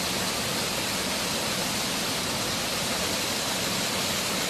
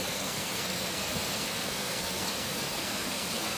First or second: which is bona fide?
first